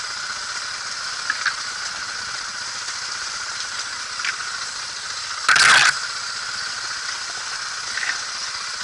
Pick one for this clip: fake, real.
real